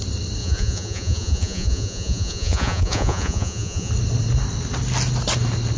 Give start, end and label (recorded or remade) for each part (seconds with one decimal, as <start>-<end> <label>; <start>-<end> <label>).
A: 0.0-0.4 recorded; 0.4-3.9 remade; 3.9-5.8 recorded